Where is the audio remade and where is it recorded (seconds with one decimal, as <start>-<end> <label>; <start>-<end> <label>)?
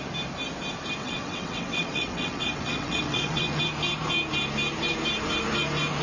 0.0-1.0 recorded; 1.0-3.6 remade; 3.6-6.0 recorded